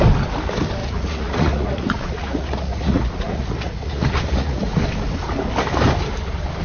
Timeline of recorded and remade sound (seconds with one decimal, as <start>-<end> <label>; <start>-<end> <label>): 0.0-0.8 recorded; 0.8-4.8 remade; 4.8-6.6 recorded